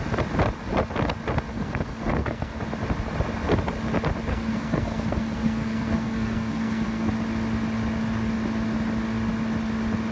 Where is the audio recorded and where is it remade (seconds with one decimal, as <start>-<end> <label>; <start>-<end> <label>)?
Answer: 0.0-1.5 recorded; 1.5-2.6 remade; 2.6-4.3 recorded; 4.3-7.1 remade; 7.1-10.1 recorded